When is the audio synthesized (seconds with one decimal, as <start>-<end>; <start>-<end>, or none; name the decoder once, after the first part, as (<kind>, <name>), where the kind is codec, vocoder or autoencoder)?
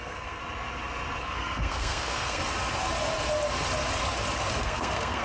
0.0-0.4 (codec, SNAC); 1.2-2.4; 4.5-5.2